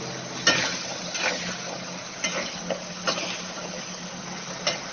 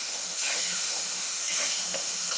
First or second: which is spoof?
second